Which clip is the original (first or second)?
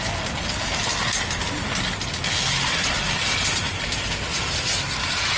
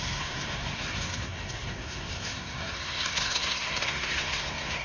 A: first